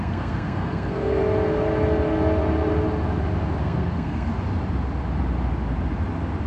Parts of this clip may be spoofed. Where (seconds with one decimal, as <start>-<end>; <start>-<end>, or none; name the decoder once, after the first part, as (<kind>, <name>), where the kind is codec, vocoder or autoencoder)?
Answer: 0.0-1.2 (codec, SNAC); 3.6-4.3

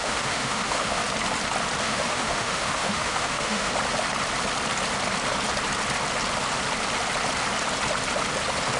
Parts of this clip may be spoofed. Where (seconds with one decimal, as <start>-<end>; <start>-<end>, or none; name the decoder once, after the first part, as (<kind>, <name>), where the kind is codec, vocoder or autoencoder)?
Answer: 0.0-1.0 (autoencoder, DAC-VAE); 1.8-3.7

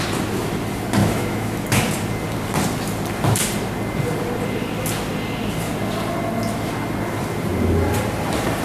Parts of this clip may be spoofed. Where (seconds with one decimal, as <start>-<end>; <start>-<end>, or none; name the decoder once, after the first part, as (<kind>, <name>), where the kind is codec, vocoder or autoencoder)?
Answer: 1.0-1.9 (autoencoder, DAC-VAE)